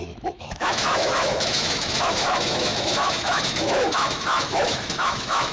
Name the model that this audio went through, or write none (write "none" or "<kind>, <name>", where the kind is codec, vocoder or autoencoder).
autoencoder, DAC-VAE